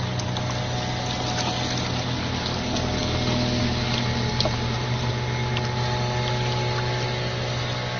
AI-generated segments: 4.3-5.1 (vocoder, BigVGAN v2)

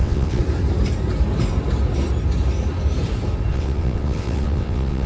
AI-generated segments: 0.0-0.4 (vocoder, WaveNeXt); 3.5-5.1

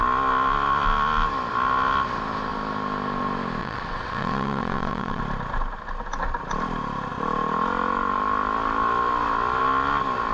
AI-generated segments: 3.6-5.2 (vocoder, WaveNeXt)

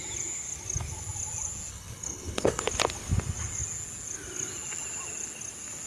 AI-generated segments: 1.7-2.6 (codec, HILCodec)

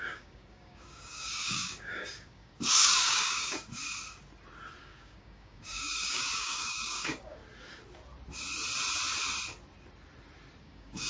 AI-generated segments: 0.0-3.8 (codec, DAC); 4.8-7.4; 10.6-11.1

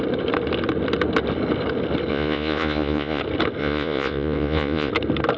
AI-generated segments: 2.1-3.2 (vocoder, Vocos); 3.6-4.9

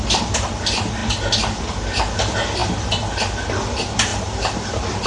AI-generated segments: 4.1-5.1 (vocoder, BigVGAN v2)

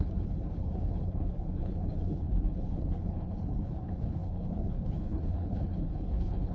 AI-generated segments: 0.0-6.5 (codec, HILCodec)